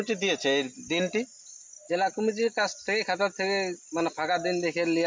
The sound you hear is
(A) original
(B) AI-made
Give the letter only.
A